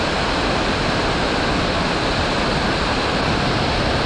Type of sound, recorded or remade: recorded